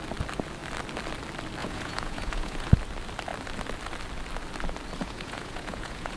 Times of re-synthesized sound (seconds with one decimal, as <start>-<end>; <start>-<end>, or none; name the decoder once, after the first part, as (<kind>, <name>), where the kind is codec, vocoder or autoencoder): 1.6-2.7 (vocoder, Vocos); 5.0-6.2